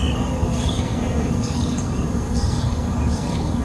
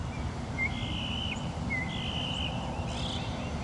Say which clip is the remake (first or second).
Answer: first